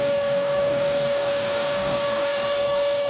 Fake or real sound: fake